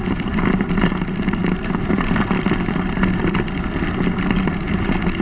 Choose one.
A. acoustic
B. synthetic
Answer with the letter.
A